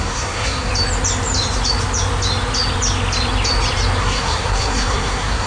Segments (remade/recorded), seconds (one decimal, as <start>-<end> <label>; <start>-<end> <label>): 0.0-0.7 remade; 0.7-4.0 recorded; 4.0-5.5 remade